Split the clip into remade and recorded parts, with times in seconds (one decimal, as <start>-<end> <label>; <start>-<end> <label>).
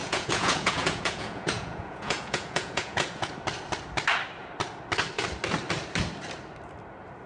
0.0-3.3 remade; 3.3-7.3 recorded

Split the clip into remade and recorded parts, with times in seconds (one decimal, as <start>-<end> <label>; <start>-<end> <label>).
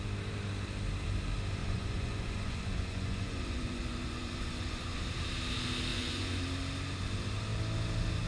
0.0-1.6 recorded; 1.6-5.0 remade; 5.0-5.9 recorded; 5.9-6.4 remade; 6.4-8.3 recorded